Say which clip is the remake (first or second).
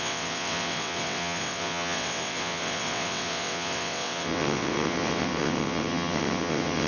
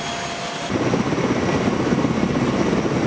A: first